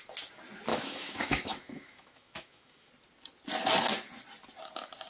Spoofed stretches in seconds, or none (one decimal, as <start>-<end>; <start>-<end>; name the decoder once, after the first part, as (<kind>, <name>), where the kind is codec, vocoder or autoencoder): 0.7-2.9 (autoencoder, DAC-VAE)